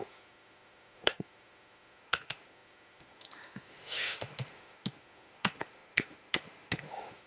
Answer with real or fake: fake